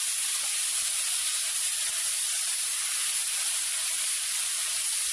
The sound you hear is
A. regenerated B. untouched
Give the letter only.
A